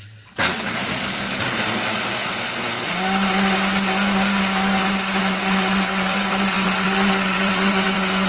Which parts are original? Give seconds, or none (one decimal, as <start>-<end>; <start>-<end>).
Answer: 0.8-5.2